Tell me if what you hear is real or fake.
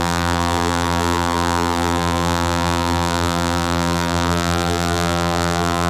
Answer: fake